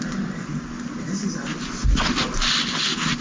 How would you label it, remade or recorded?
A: recorded